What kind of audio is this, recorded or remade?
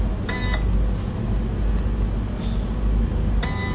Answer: recorded